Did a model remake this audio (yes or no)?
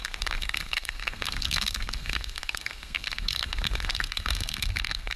yes